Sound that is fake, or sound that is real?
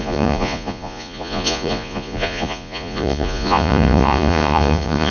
fake